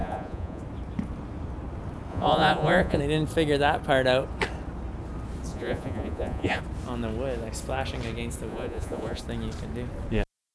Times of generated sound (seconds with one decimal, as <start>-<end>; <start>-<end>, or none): 0.0-0.6; 2.1-3.0; 5.5-6.6; 8.5-9.2